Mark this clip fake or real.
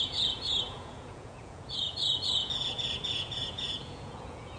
fake